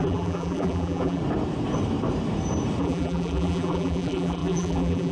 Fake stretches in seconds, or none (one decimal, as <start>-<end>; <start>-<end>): 0.0-1.2; 2.8-5.1